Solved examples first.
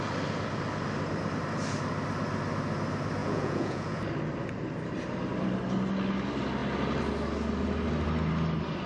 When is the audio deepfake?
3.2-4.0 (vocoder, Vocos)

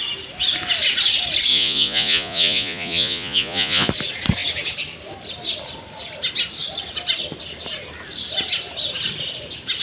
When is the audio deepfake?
1.5-3.9 (vocoder, Vocos)

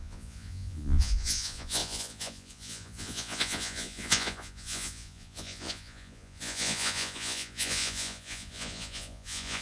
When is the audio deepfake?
0.0-9.6 (vocoder, Vocos)

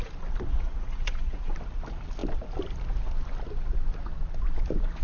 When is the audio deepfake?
0.5-1.5 (vocoder, Vocos)

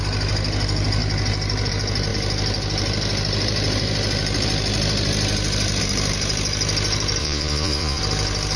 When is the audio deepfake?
7.2-8.0 (vocoder, Vocos)

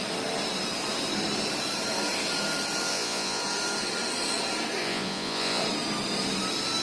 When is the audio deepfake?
2.9-3.4 (vocoder, Vocos); 4.8-5.6

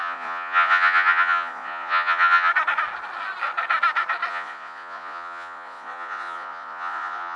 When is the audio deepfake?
0.0-2.5 (vocoder, Vocos); 4.3-7.4

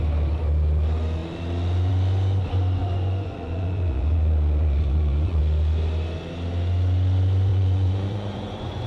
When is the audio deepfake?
2.8-5.4 (vocoder, Vocos); 7.5-8.9